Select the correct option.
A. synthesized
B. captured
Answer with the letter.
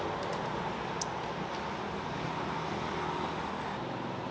B